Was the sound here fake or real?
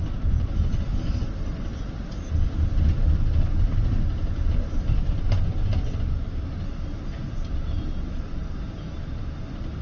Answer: real